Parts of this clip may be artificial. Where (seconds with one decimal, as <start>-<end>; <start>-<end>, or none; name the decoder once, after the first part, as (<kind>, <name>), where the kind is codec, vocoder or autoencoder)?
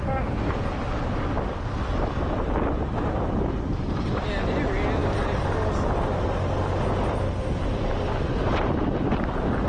none